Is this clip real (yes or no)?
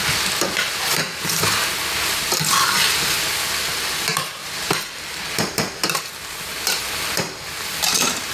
no